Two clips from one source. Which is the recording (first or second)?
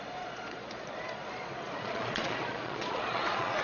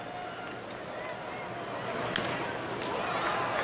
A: second